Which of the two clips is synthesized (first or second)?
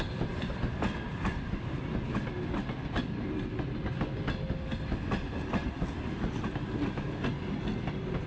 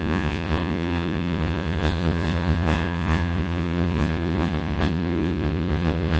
second